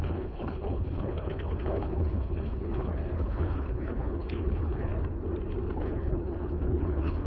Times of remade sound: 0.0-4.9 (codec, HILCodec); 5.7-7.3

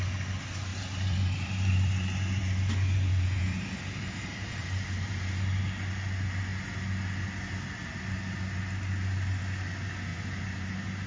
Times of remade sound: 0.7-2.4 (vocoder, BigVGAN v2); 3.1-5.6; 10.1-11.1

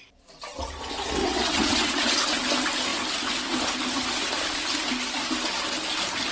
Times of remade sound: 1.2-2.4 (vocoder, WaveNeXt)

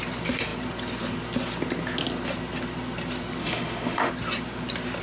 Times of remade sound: 3.4-4.1 (autoencoder, DAC-VAE)

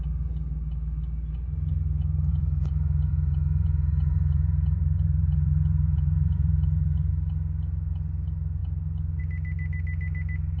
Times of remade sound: 2.3-7.1 (vocoder, Vocos)

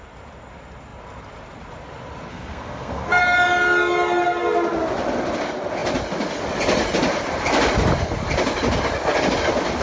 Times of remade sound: 2.3-3.2 (codec, SNAC)